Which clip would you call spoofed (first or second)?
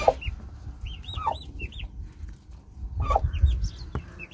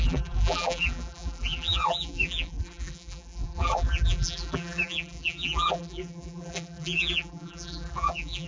second